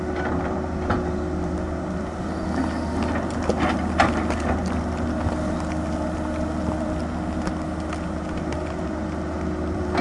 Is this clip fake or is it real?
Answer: real